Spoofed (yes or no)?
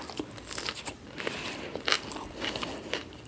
no